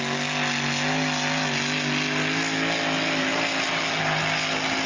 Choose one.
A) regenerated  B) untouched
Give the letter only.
B